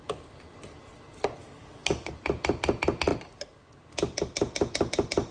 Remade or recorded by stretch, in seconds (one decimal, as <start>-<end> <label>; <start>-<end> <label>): 0.0-1.4 recorded; 1.4-2.1 remade; 2.1-5.3 recorded